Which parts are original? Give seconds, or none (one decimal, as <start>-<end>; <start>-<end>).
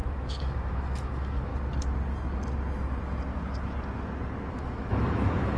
1.5-4.5